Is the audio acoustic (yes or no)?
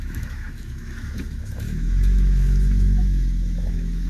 no